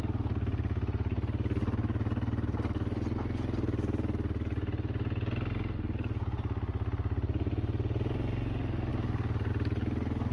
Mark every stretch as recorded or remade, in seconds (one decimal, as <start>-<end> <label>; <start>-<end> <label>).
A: 0.0-8.9 recorded; 8.9-9.5 remade; 9.5-10.3 recorded